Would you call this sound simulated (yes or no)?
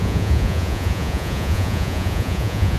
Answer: yes